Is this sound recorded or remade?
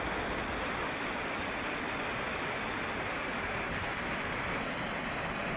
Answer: recorded